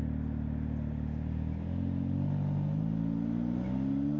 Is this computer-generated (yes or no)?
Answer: no